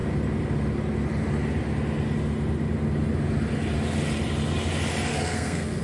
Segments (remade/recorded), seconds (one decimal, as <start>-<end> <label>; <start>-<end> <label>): 0.0-5.1 recorded; 5.1-5.8 remade